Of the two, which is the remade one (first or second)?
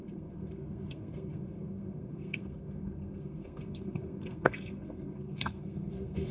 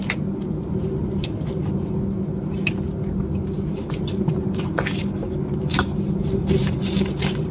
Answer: first